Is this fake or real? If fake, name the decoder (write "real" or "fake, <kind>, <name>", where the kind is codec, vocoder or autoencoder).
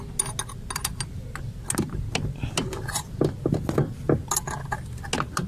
real